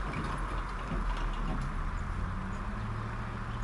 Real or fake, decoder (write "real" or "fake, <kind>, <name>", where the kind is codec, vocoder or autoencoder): real